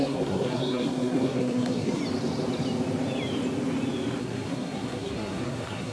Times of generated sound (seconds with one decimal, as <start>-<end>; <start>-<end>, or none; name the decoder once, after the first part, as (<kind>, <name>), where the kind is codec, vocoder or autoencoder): 0.0-2.0 (codec, SNAC); 4.2-5.9